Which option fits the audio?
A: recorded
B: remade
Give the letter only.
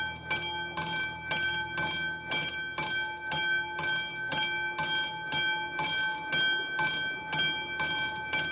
A